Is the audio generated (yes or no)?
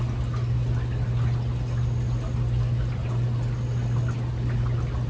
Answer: no